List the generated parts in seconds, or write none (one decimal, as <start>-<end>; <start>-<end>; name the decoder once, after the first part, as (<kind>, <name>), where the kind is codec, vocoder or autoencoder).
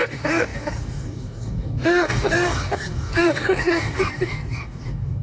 0.0-5.2 (codec, DAC)